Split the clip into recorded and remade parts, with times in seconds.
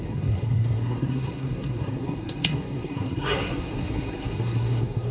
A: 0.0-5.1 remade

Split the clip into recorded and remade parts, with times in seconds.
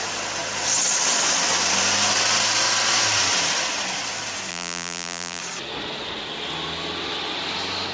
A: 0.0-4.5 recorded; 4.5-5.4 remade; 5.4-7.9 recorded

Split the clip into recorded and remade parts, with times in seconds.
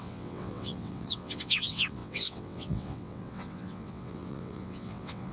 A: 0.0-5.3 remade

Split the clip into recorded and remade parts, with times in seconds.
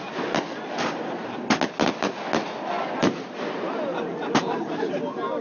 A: 0.0-5.4 recorded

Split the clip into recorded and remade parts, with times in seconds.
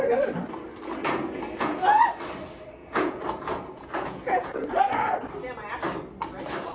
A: 0.0-1.0 recorded; 1.0-2.0 remade; 2.0-2.8 recorded; 2.8-4.7 remade; 4.7-6.7 recorded